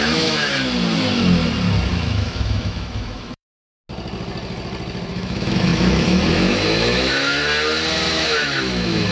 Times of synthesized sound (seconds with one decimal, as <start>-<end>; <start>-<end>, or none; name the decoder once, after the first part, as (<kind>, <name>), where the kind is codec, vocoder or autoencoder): 0.0-0.5 (autoencoder, DAC-VAE); 1.9-3.7; 5.1-7.4; 8.1-9.1